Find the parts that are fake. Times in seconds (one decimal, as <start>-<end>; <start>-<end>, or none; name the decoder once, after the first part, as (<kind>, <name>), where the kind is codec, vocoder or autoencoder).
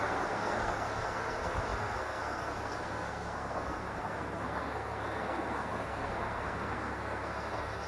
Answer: 0.0-7.9 (codec, SNAC)